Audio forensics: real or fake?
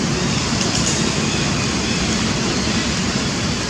real